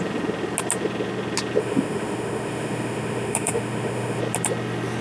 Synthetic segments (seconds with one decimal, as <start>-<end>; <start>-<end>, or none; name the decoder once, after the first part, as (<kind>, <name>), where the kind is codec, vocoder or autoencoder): 1.6-4.2 (autoencoder, DAC-VAE)